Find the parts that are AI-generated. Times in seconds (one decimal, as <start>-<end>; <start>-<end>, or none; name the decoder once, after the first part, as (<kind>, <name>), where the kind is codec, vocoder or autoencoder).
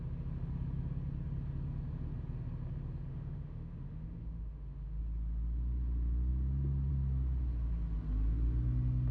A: 3.1-5.0 (autoencoder, DAC-VAE)